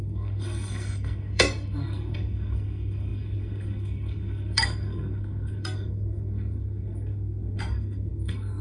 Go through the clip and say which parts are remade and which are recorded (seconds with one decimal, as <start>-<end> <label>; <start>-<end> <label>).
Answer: 0.0-8.6 remade